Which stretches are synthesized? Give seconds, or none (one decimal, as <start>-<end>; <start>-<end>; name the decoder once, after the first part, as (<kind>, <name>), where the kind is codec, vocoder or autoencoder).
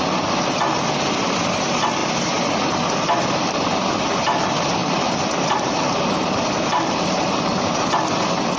4.8-7.9 (vocoder, BigVGAN v2)